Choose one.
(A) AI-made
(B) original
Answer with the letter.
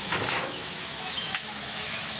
A